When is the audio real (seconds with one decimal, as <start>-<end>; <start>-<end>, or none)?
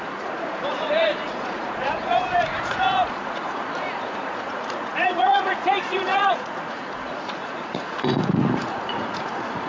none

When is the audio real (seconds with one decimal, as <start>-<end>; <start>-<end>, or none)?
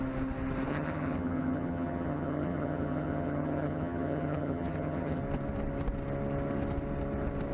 0.0-0.7; 5.2-7.5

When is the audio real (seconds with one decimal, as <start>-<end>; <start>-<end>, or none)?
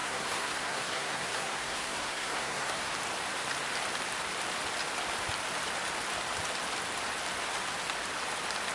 2.9-8.7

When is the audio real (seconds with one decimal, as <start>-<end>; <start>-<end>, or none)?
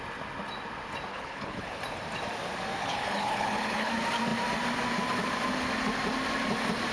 0.0-1.1; 1.8-2.8; 3.9-6.9